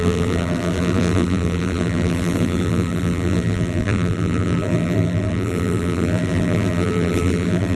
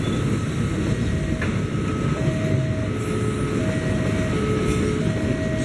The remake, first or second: first